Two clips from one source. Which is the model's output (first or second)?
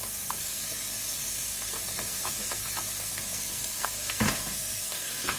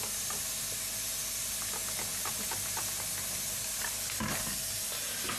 first